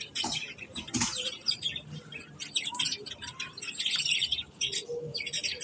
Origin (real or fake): fake